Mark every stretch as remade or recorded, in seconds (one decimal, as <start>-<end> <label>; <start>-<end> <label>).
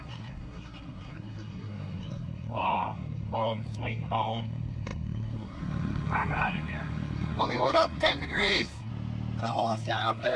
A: 0.0-8.9 remade; 8.9-9.4 recorded; 9.4-10.4 remade